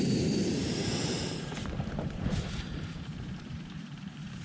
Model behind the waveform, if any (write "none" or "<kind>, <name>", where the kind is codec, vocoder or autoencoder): vocoder, BigVGAN v2